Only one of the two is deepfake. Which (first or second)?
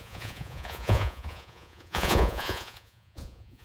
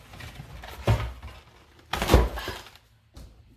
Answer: first